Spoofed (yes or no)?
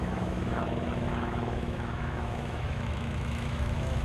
yes